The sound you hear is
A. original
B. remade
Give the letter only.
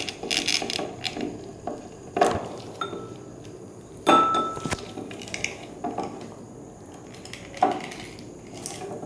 A